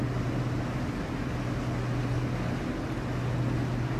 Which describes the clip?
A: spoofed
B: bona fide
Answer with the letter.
B